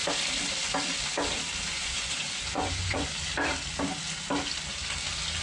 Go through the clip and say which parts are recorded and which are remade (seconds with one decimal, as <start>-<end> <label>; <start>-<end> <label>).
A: 0.0-1.7 recorded; 1.7-3.1 remade; 3.1-5.4 recorded